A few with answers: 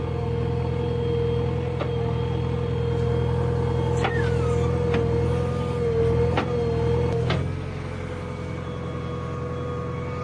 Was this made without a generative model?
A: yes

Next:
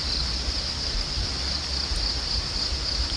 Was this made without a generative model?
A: yes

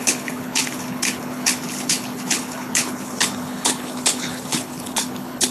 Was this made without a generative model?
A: no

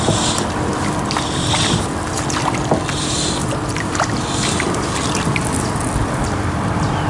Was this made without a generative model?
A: yes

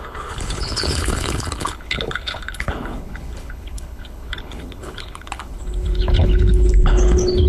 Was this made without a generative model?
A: no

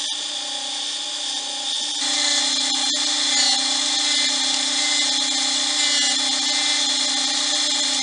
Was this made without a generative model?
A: yes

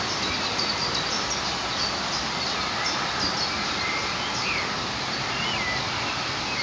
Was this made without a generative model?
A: yes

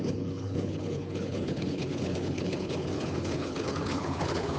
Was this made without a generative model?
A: no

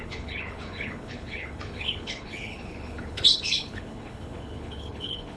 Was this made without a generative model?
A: no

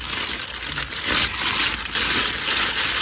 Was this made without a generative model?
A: yes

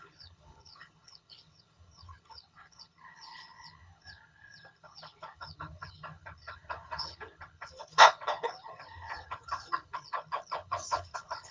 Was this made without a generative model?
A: no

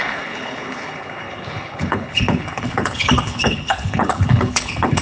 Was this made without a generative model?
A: no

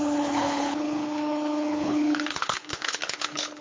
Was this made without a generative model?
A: no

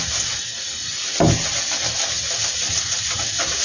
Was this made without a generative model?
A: yes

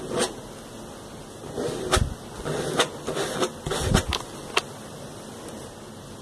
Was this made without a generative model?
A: yes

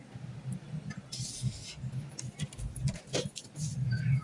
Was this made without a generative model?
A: yes